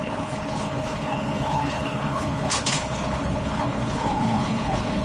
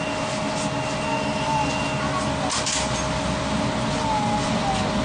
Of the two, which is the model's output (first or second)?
first